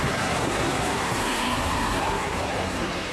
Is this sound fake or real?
fake